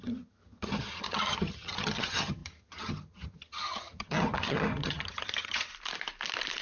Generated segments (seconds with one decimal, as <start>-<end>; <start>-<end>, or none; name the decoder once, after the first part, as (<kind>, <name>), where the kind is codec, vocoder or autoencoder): 0.0-5.7 (vocoder, HiFi-GAN)